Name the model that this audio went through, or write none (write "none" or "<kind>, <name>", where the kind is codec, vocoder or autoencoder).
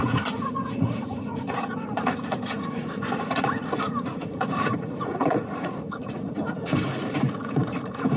vocoder, Vocos